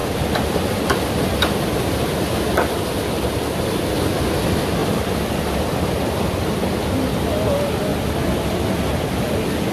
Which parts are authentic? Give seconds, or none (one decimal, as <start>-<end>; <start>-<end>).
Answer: 0.0-9.7